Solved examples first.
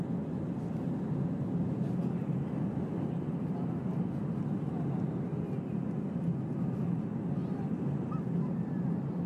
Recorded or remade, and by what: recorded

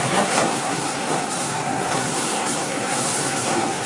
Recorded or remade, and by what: remade, codec, SNAC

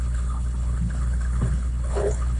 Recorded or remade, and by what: remade, codec, HILCodec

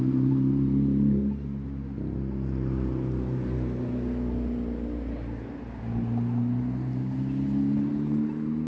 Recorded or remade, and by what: recorded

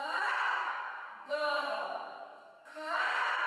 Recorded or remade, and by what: remade, codec, SNAC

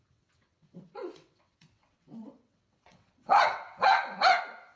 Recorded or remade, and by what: remade, vocoder, WaveNeXt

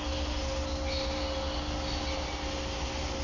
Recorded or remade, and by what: recorded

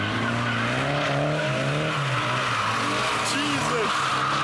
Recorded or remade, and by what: recorded